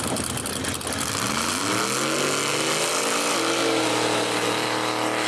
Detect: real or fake real